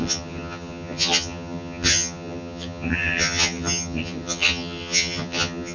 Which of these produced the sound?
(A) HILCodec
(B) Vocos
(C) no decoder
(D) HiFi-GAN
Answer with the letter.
D